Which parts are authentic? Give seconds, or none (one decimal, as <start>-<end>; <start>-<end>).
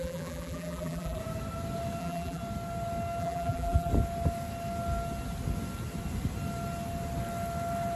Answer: 1.2-2.0; 2.4-3.2; 3.9-8.0